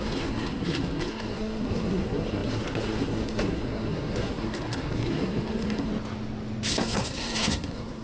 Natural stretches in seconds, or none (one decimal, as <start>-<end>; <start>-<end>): 5.9-6.7